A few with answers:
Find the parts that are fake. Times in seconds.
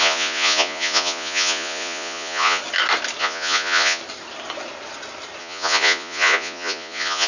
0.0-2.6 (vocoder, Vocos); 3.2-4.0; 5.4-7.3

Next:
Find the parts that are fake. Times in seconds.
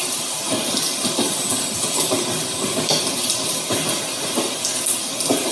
none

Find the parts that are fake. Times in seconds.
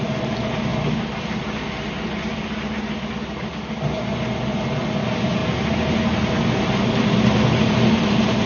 none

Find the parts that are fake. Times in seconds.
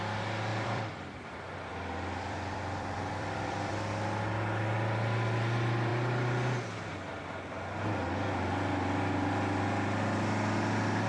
0.5-3.7 (vocoder, BigVGAN v2)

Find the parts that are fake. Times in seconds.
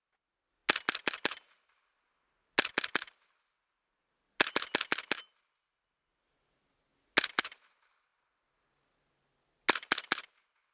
none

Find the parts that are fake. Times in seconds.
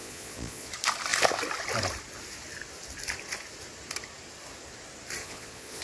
0.0-0.7 (vocoder, Vocos); 5.2-5.8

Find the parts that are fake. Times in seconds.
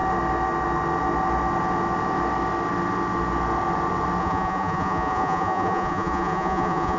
4.2-7.0 (vocoder, Vocos)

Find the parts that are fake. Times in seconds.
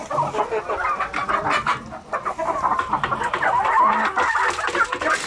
none